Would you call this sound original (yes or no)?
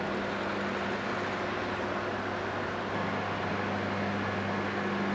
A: yes